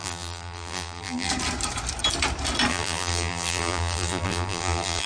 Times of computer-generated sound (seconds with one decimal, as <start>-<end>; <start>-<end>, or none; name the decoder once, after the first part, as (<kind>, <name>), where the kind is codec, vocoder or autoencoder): 0.0-1.3 (vocoder, BigVGAN v2); 2.7-5.1